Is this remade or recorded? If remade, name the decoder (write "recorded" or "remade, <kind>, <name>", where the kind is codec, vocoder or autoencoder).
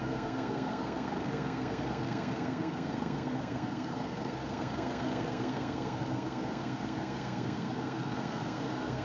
remade, codec, SNAC